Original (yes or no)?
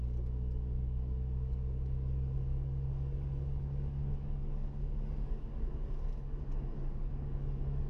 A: no